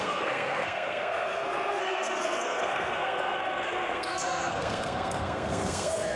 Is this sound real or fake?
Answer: fake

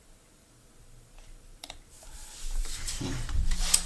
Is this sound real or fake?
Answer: fake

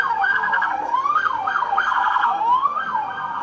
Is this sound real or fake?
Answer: fake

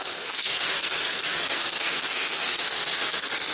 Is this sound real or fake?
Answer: fake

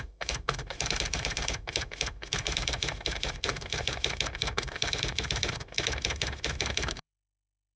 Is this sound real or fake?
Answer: fake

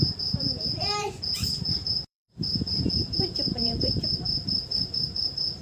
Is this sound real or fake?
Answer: fake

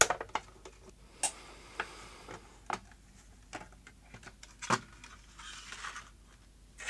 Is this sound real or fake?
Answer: real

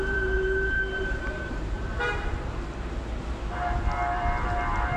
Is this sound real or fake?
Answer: fake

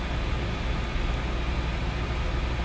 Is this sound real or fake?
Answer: real